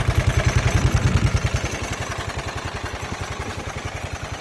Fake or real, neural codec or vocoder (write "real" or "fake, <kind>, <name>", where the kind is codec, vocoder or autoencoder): real